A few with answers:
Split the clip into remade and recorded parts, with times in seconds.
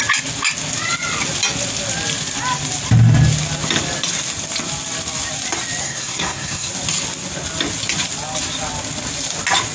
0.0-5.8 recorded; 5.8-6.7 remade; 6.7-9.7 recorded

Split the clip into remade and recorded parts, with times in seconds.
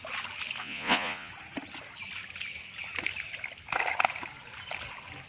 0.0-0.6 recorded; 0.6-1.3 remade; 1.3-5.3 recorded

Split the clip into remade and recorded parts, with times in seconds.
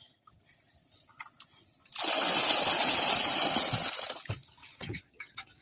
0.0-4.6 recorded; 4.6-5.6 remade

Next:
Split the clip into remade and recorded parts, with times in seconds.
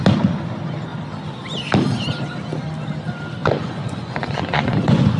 0.0-3.4 recorded; 3.4-5.2 remade